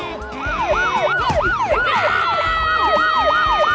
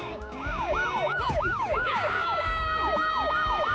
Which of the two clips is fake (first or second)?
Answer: second